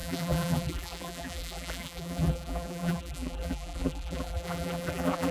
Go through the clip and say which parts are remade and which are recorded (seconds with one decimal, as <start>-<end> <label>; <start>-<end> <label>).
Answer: 0.0-5.3 remade